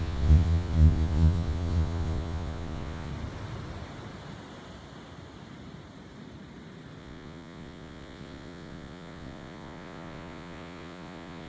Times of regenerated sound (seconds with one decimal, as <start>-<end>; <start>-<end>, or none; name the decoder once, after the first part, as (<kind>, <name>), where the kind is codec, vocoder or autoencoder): 0.0-3.1 (vocoder, Vocos); 7.0-11.5

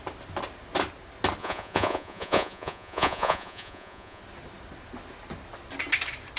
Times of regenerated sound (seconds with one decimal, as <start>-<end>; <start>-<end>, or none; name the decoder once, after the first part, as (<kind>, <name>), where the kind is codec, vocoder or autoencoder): 1.4-4.2 (vocoder, Vocos)